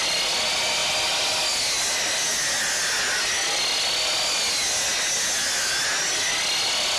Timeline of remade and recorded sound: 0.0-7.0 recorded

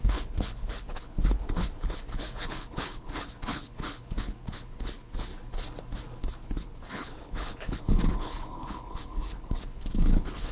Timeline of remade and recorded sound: 0.0-5.3 remade; 5.3-6.3 recorded; 6.3-10.5 remade

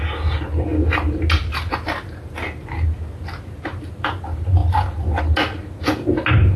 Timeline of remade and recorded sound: 0.0-6.6 recorded

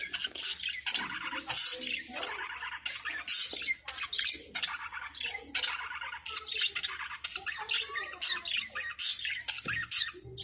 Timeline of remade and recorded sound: 0.0-10.4 recorded

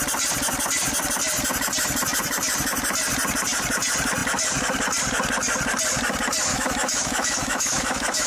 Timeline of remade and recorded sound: 0.0-6.5 recorded; 6.5-8.3 remade

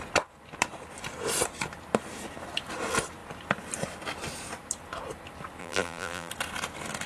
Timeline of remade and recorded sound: 0.0-5.6 recorded; 5.6-6.3 remade; 6.3-7.1 recorded